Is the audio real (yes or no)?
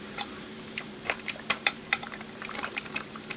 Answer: no